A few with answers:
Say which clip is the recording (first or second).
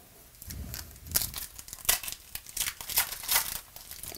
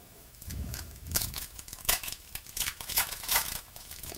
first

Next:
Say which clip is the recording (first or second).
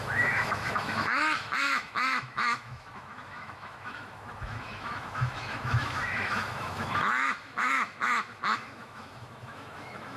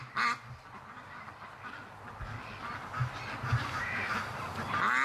second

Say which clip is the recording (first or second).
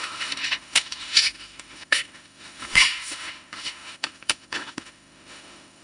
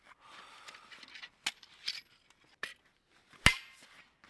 second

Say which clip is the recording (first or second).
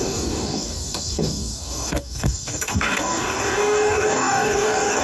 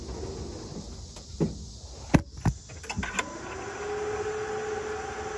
second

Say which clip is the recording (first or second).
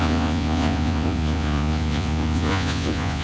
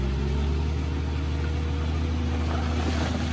second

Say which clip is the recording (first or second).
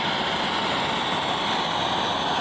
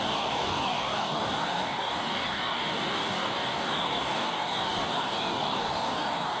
first